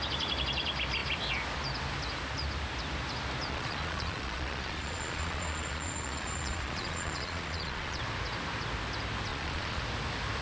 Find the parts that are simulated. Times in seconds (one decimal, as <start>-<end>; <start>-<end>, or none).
3.5-8.0; 9.3-9.8